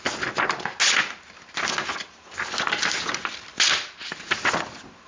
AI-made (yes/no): no